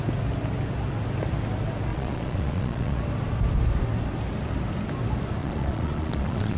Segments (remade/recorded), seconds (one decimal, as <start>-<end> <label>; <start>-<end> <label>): 0.0-1.9 recorded; 1.9-3.0 remade; 3.0-5.4 recorded; 5.4-6.6 remade